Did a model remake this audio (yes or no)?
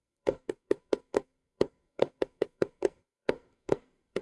yes